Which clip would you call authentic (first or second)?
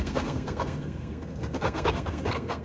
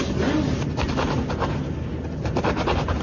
second